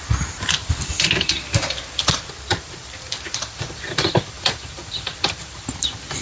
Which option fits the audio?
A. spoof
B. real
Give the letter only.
A